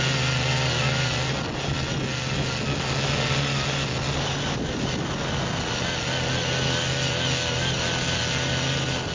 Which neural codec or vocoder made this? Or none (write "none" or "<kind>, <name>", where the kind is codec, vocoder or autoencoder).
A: none